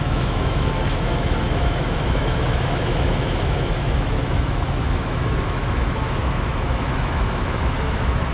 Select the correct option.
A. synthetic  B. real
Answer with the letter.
A